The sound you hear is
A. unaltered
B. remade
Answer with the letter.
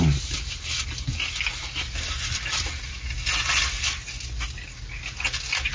A